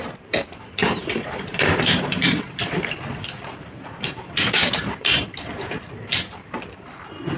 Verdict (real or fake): fake